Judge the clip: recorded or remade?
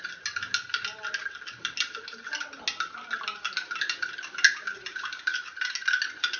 recorded